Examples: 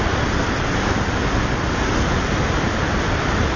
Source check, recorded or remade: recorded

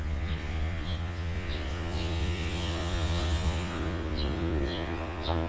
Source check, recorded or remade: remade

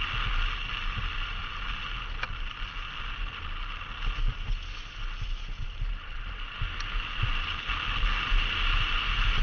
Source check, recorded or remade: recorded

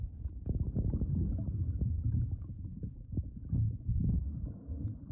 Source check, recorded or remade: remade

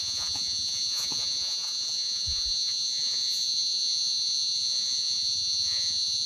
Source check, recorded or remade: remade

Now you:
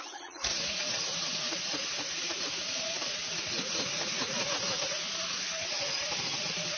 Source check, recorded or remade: remade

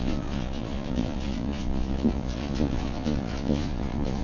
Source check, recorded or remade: remade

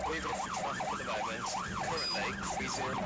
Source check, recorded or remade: recorded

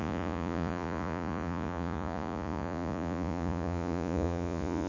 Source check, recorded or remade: remade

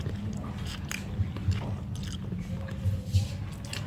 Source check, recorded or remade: recorded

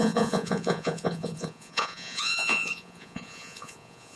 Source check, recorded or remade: remade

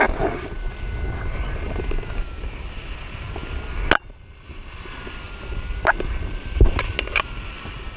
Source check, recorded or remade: recorded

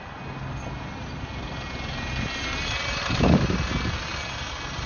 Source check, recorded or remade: recorded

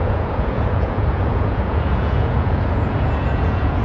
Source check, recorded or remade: remade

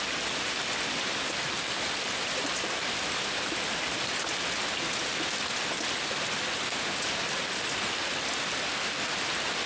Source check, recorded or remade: recorded